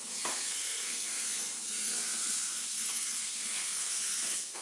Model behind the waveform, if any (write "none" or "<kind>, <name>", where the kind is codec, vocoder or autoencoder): codec, SNAC